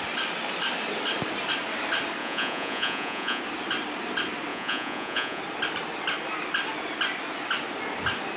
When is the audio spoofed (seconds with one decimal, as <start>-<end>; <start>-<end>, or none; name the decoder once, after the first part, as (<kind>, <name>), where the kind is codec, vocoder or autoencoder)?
2.2-3.4 (vocoder, Vocos); 4.5-5.4